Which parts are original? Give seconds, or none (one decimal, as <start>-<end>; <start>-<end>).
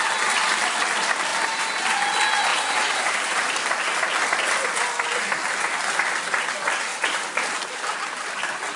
0.0-1.3; 1.8-2.5; 4.1-6.9; 8.0-8.8